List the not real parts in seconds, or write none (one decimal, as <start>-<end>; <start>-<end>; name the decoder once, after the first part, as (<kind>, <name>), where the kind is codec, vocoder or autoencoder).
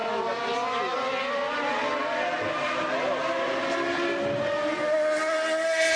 none